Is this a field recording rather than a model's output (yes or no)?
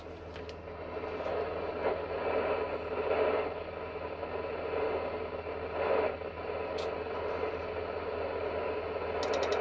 yes